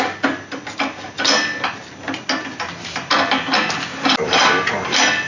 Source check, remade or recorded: recorded